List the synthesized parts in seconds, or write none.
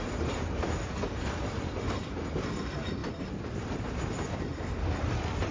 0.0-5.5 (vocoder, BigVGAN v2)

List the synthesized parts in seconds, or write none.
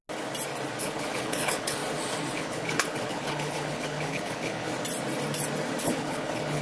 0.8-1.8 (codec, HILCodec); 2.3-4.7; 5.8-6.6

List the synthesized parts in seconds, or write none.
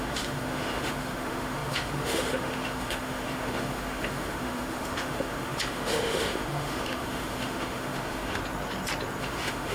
0.0-8.4 (autoencoder, DAC-VAE); 9.2-9.7